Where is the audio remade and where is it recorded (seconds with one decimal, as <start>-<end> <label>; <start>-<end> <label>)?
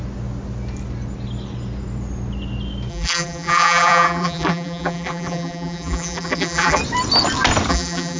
0.0-2.9 recorded; 2.9-6.8 remade; 6.8-7.7 recorded; 7.7-8.2 remade